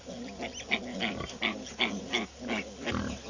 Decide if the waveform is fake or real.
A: real